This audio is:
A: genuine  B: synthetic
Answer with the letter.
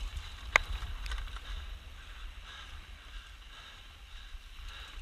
B